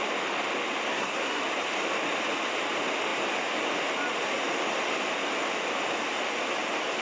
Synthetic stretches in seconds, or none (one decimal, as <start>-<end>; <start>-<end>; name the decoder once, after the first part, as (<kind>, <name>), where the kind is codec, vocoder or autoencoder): 0.9-1.4 (codec, SNAC)